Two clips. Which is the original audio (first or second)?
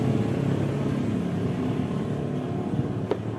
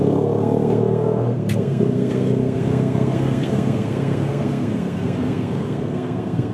first